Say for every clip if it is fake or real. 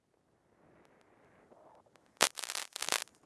real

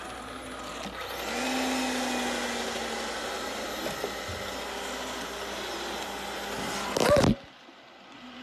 real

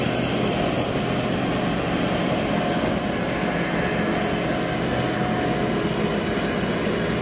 real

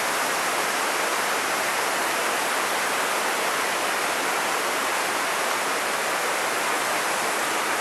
real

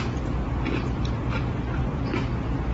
fake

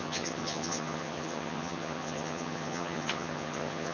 fake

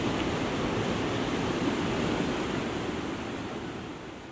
real